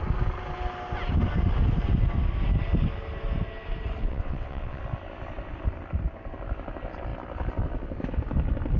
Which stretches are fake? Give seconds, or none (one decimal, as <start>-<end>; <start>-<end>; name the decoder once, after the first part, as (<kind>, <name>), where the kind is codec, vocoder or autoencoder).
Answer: 4.0-4.8 (vocoder, WaveNeXt)